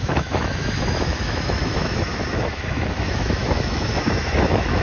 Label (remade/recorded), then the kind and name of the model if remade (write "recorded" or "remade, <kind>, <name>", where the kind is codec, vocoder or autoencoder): remade, autoencoder, DAC-VAE